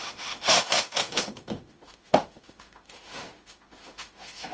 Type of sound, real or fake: fake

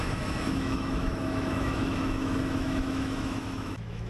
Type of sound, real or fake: fake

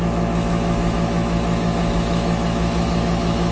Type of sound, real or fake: fake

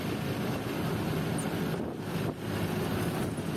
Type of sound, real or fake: real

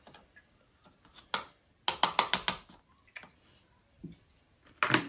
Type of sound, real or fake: real